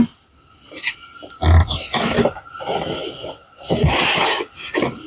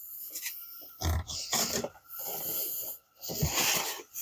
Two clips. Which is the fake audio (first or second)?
second